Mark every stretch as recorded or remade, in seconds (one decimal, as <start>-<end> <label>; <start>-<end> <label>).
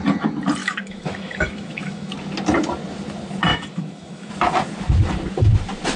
0.0-0.6 recorded; 0.6-2.1 remade; 2.1-3.5 recorded; 3.5-4.3 remade; 4.3-6.0 recorded